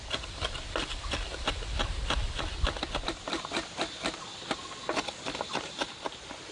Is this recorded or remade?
recorded